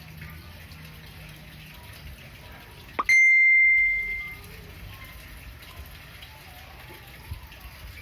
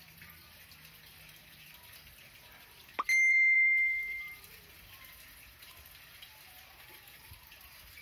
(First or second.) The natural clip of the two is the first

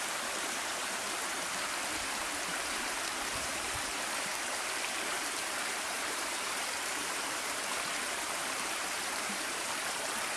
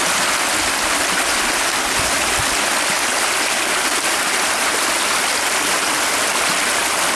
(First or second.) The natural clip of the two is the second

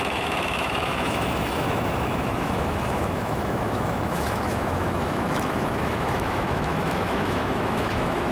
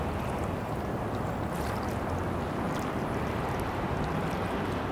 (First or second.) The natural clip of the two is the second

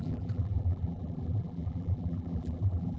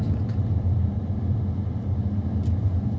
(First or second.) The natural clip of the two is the second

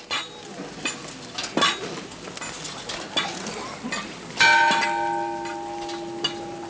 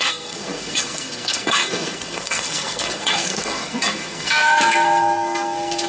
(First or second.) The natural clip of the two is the first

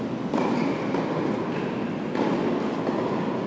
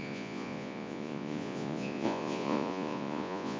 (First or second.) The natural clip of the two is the first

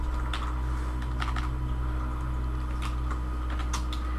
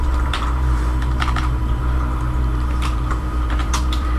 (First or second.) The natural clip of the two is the first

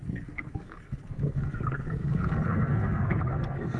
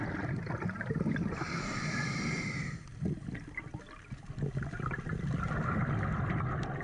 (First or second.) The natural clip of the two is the second